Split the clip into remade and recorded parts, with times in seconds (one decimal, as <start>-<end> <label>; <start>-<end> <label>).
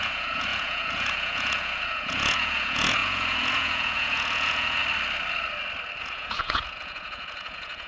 0.0-4.8 remade; 4.8-6.0 recorded; 6.0-7.9 remade